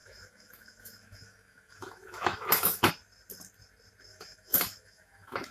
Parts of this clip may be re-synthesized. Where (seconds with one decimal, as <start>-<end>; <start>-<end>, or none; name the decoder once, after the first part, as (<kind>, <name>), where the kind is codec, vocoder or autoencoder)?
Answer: 0.0-2.9 (autoencoder, DAC-VAE); 4.1-5.5